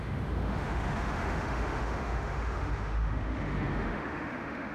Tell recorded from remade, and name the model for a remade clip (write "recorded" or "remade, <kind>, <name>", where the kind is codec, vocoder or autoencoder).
remade, autoencoder, DAC-VAE